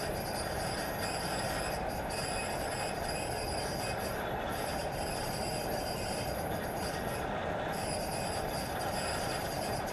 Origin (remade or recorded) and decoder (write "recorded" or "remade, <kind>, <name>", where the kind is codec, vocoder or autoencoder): remade, vocoder, BigVGAN v2